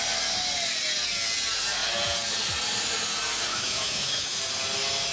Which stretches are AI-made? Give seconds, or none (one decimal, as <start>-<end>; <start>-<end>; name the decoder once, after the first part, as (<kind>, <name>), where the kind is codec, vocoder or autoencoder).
3.5-4.4 (autoencoder, DAC-VAE)